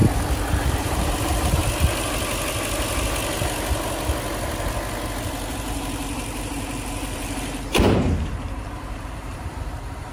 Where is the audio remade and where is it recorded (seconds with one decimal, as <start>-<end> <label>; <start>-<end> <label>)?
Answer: 0.0-0.6 recorded; 0.6-1.6 remade; 1.6-5.5 recorded; 5.5-10.1 remade